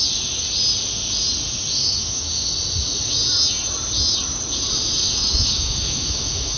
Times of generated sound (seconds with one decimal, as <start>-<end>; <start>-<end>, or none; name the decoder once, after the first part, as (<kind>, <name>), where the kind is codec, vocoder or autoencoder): 1.8-2.5 (autoencoder, DAC-VAE); 5.0-6.6